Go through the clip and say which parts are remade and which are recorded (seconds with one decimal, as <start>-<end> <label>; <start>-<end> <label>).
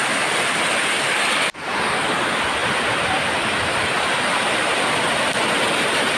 0.0-0.6 remade; 0.6-2.6 recorded; 2.6-4.9 remade; 4.9-6.2 recorded